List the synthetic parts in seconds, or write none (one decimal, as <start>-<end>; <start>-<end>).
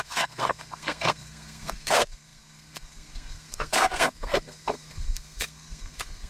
0.0-6.3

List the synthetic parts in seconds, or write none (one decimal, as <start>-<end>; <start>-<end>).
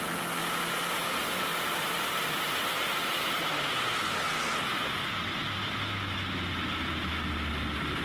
none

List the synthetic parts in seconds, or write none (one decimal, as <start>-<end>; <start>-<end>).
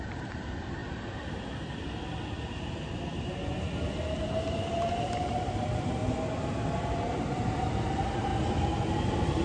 0.0-0.8; 4.9-6.0; 7.2-8.3; 8.9-9.4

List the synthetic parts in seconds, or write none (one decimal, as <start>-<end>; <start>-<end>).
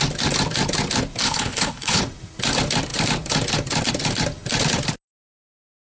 1.2-2.0